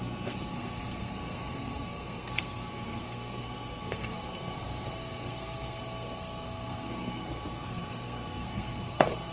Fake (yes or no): yes